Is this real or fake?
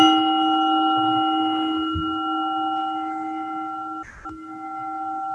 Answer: real